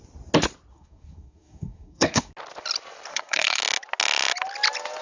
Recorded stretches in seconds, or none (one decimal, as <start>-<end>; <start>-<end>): 0.0-0.7; 2.3-3.1; 3.6-5.0